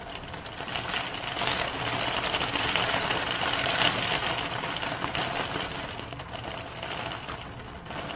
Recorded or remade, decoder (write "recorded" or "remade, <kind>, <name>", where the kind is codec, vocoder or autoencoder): recorded